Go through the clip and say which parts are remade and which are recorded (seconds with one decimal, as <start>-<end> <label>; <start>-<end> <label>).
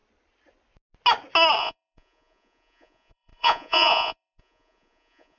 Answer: 0.0-1.6 recorded; 1.6-5.4 remade